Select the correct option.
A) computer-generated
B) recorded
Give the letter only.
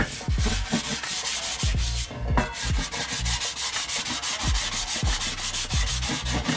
B